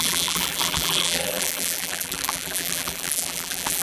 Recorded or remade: remade